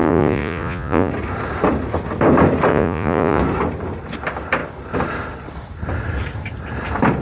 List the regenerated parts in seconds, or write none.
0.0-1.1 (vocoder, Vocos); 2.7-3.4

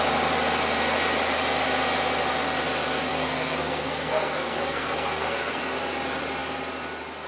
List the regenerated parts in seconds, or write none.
3.1-5.6 (codec, SNAC)

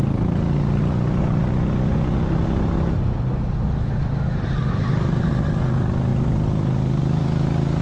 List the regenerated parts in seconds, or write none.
none

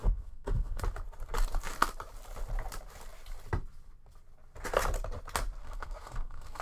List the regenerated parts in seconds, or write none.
0.0-0.8 (codec, SNAC); 5.6-6.6

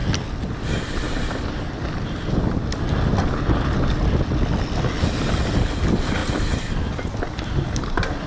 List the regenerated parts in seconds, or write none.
none

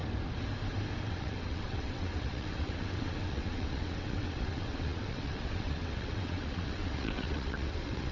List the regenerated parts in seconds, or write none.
1.0-8.1 (vocoder, WaveNeXt)